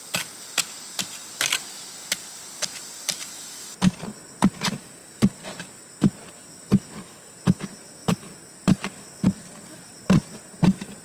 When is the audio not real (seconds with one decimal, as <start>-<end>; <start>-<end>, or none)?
5.0-5.8; 8.0-9.6